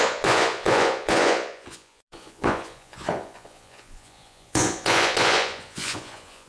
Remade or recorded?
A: remade